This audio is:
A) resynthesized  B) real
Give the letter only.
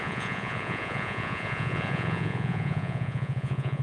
A